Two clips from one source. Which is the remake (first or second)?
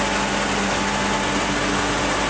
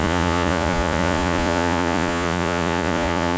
second